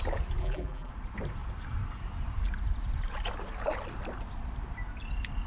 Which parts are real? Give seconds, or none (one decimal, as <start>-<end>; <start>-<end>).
0.0-0.4; 0.9-5.5